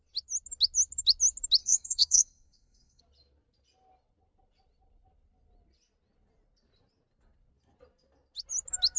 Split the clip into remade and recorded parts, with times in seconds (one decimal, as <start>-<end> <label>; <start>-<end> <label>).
0.0-1.6 recorded; 1.6-3.0 remade; 3.0-9.0 recorded